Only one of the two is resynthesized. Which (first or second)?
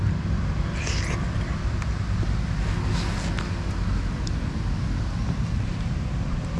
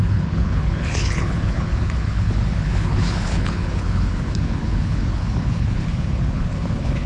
second